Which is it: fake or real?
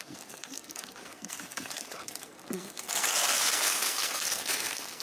fake